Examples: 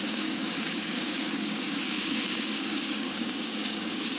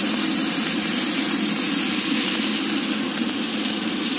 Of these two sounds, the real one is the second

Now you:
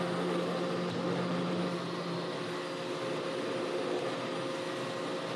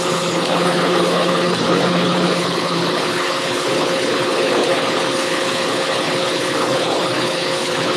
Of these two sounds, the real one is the first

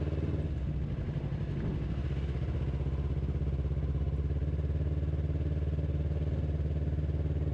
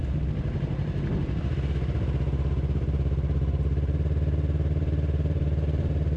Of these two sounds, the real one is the first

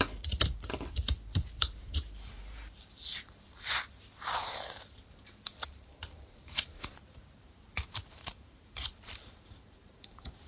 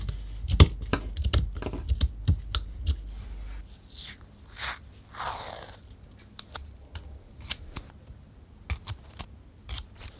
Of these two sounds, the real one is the second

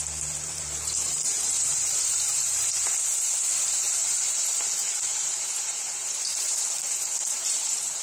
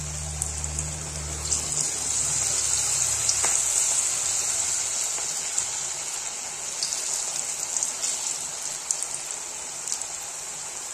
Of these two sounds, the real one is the second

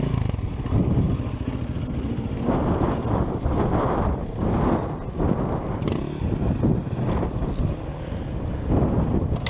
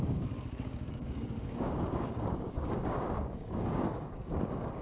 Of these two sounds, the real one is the first